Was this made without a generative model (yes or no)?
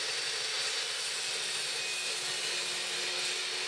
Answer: yes